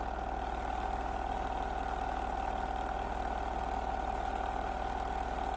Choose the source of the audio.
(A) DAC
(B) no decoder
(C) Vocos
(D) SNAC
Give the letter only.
B